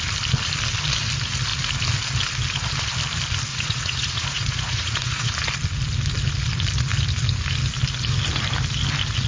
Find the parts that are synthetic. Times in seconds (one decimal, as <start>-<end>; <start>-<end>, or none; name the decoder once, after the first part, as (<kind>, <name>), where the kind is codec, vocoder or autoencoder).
3.5-5.3 (vocoder, Vocos)